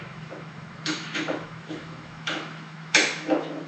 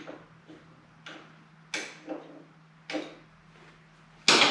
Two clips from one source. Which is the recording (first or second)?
second